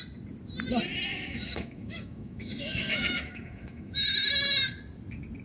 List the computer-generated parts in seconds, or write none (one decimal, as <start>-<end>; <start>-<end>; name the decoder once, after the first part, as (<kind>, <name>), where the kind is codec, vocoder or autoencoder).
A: 1.1-4.3 (autoencoder, DAC-VAE)